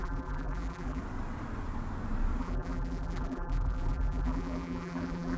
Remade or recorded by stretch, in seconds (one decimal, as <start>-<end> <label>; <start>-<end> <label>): 0.0-1.0 remade; 1.0-2.4 recorded; 2.4-5.4 remade